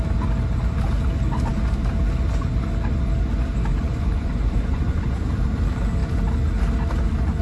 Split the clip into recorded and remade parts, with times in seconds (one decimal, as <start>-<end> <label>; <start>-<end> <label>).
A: 0.0-3.7 recorded; 3.7-5.3 remade; 5.3-7.4 recorded